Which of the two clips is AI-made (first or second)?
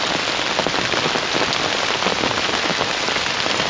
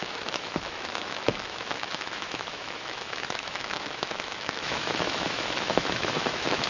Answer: second